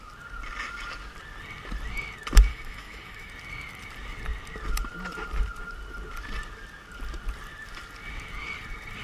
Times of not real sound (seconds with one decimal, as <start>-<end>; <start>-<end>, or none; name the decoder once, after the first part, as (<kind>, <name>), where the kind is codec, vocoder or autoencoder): 2.5-3.3 (autoencoder, DAC-VAE)